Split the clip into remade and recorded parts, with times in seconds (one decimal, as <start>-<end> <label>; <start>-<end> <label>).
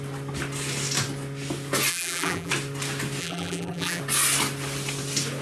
0.0-1.9 recorded; 1.9-2.5 remade; 2.5-3.2 recorded; 3.2-4.0 remade; 4.0-5.4 recorded